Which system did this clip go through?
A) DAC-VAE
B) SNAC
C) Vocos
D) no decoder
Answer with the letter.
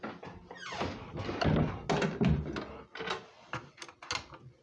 D